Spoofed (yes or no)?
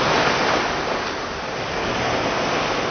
no